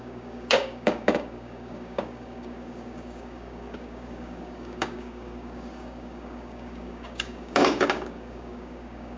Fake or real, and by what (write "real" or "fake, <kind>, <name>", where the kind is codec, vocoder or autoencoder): fake, codec, DAC